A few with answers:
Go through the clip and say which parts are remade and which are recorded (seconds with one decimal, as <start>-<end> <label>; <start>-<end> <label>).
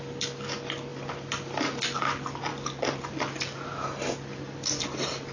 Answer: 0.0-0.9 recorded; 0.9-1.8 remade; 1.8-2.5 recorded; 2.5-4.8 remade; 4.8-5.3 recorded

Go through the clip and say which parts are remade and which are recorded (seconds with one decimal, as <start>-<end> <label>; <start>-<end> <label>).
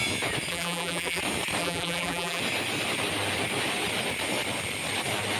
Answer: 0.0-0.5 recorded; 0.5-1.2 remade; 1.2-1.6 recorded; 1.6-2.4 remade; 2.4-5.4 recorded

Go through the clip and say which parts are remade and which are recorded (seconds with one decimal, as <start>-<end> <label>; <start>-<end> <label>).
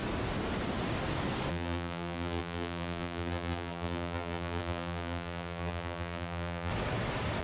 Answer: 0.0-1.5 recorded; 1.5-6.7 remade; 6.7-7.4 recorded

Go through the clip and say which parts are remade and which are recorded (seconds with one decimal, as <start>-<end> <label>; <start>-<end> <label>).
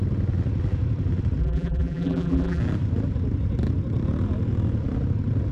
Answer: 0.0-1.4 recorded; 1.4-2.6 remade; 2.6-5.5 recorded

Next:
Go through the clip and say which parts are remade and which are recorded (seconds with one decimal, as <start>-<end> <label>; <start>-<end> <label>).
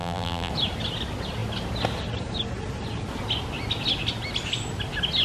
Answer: 0.0-0.5 remade; 0.5-5.2 recorded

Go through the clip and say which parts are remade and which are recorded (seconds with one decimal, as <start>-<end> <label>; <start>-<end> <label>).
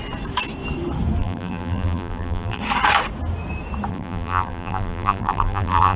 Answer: 0.0-1.2 recorded; 1.2-2.6 remade; 2.6-3.9 recorded; 3.9-6.0 remade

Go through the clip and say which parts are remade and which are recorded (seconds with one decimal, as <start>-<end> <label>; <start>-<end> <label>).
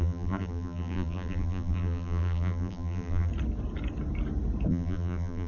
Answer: 0.0-3.3 remade; 3.3-4.7 recorded; 4.7-5.5 remade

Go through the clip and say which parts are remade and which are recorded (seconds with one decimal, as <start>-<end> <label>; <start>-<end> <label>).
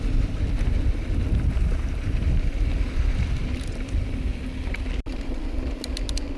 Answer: 0.0-1.7 recorded; 1.7-3.4 remade; 3.4-6.4 recorded